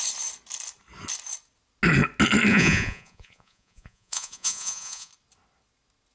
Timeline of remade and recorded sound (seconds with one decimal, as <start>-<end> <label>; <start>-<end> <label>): 0.0-2.5 recorded; 2.5-5.1 remade; 5.1-6.1 recorded